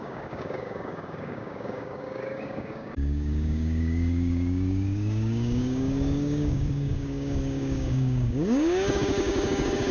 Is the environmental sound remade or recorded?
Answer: remade